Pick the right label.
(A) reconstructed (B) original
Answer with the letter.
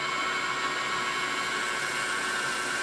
B